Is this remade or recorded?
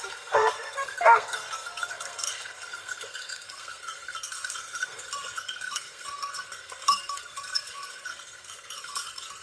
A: remade